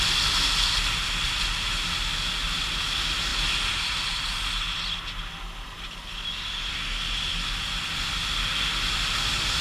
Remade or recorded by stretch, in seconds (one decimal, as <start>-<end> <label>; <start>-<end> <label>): 0.0-9.6 recorded